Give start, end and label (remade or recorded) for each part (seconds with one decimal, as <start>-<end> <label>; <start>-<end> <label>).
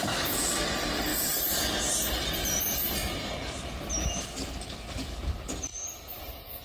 0.0-6.6 recorded